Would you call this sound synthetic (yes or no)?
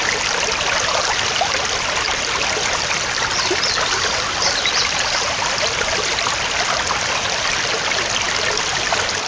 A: no